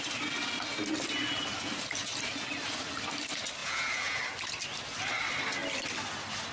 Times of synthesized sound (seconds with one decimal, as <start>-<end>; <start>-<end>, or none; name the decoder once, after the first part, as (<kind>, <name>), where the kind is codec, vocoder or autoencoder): 3.6-4.2 (vocoder, Vocos)